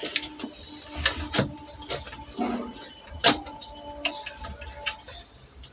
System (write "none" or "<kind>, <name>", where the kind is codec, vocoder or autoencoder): none